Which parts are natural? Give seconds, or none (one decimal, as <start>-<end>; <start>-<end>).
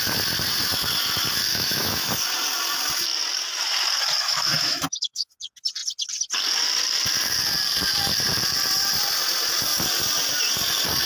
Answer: 0.0-1.5; 2.1-4.2; 5.3-11.1